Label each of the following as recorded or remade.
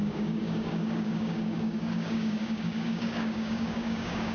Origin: remade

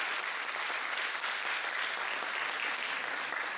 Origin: recorded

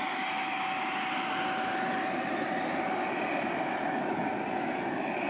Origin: recorded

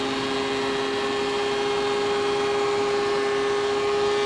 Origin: recorded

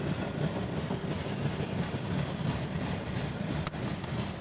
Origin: recorded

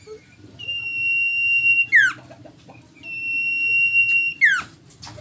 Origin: recorded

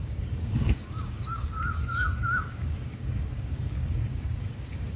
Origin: remade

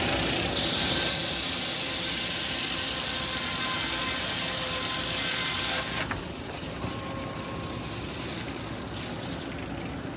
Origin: recorded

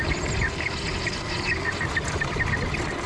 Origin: recorded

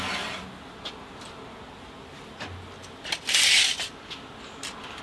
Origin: recorded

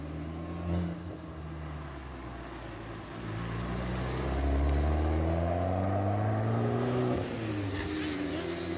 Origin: recorded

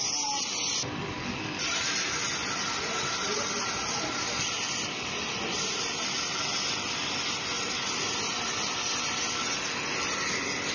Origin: recorded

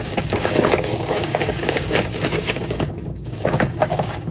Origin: remade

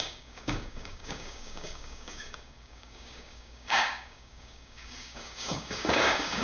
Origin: remade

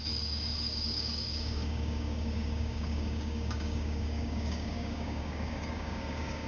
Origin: remade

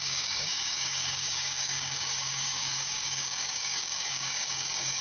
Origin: remade